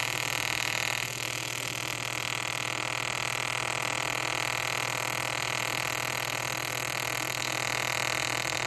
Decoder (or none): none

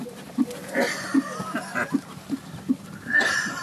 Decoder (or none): none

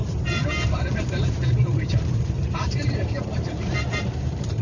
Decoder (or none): vocoder, BigVGAN v2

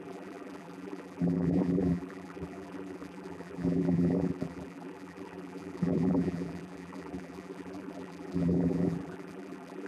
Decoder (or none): vocoder, BigVGAN v2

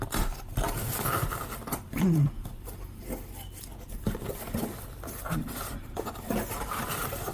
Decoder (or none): vocoder, BigVGAN v2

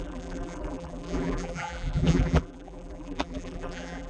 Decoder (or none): vocoder, BigVGAN v2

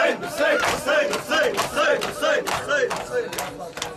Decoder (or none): none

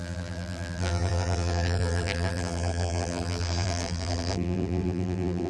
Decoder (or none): vocoder, BigVGAN v2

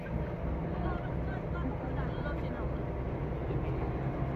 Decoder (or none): none